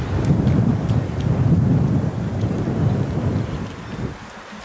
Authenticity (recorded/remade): recorded